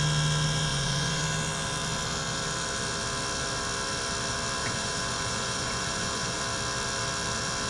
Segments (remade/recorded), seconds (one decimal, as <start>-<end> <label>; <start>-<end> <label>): 0.0-0.7 recorded; 0.7-1.2 remade; 1.2-4.6 recorded; 4.6-6.4 remade; 6.4-7.7 recorded